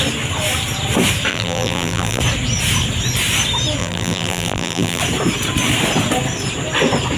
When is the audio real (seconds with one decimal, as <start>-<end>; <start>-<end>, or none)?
0.0-1.3; 2.2-3.8; 5.0-7.2